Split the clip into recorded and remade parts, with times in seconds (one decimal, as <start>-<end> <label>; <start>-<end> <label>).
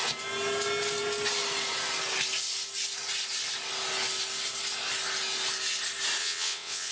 0.0-6.2 recorded; 6.2-6.9 remade